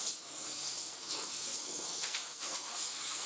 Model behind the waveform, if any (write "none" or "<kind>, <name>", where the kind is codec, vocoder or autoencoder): codec, SNAC